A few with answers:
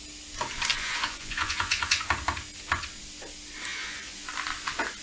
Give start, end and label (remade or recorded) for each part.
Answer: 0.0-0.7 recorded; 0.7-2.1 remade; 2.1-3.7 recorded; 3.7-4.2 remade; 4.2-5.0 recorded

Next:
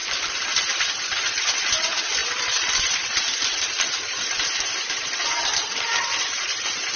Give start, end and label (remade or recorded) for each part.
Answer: 0.0-1.0 recorded; 1.0-7.0 remade